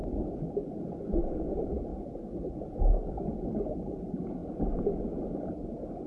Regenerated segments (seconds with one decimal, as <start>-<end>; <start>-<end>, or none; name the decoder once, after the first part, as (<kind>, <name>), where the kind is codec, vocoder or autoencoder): 0.0-1.4 (vocoder, BigVGAN v2); 1.9-2.6; 4.4-5.2